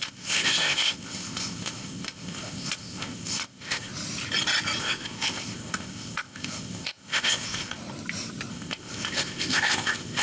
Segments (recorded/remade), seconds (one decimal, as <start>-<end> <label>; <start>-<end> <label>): 0.0-3.9 remade; 3.9-4.8 recorded; 4.8-7.8 remade; 7.8-8.5 recorded; 8.5-10.2 remade